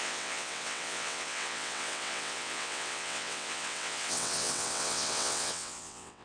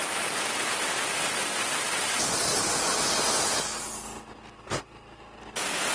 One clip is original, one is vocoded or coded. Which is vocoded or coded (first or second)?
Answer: first